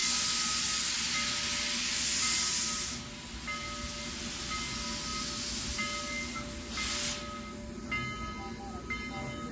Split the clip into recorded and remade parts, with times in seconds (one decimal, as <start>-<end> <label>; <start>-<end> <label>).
0.0-9.5 recorded